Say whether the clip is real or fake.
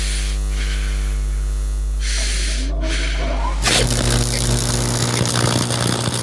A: real